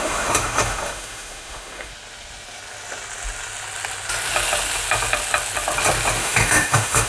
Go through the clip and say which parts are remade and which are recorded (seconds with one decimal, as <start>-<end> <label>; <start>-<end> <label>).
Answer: 0.0-1.9 remade; 1.9-6.2 recorded; 6.2-7.1 remade